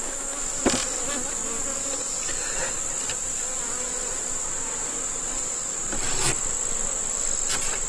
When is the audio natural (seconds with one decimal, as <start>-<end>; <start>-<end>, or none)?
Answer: 0.0-7.9